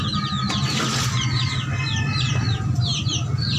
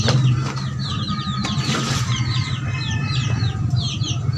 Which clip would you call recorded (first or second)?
first